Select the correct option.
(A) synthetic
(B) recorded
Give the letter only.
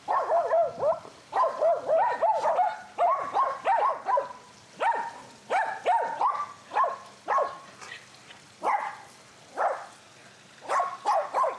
B